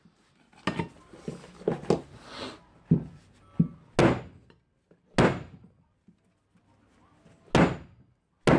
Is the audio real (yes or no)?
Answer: yes